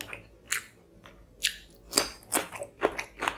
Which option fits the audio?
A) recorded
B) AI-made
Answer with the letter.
A